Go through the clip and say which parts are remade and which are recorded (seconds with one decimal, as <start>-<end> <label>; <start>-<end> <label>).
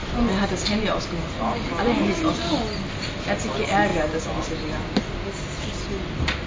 0.0-6.5 recorded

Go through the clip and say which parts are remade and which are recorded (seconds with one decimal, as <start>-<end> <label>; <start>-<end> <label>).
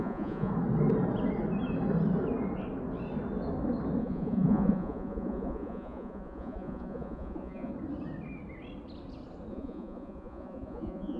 0.0-0.5 remade; 0.5-4.0 recorded; 4.0-7.7 remade; 7.7-9.5 recorded; 9.5-11.2 remade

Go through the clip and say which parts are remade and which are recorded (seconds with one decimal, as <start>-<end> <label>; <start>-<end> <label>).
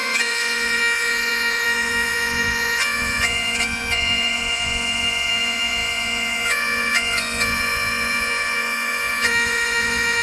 0.0-10.2 remade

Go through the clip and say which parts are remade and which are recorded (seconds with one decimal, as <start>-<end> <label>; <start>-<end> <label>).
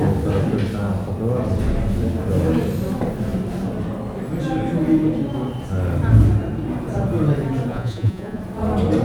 0.0-7.7 recorded; 7.7-8.4 remade; 8.4-9.0 recorded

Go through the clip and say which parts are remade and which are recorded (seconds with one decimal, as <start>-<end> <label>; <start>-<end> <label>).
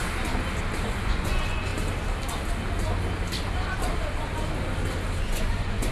0.0-0.9 recorded; 0.9-1.7 remade; 1.7-5.2 recorded; 5.2-5.9 remade